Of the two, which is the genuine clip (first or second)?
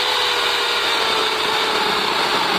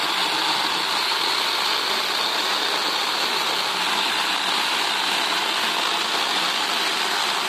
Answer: first